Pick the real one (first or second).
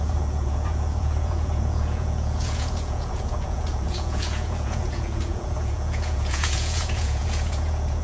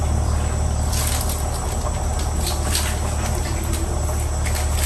second